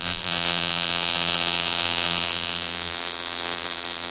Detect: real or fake fake